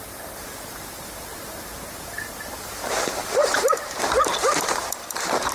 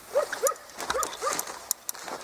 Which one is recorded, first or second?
second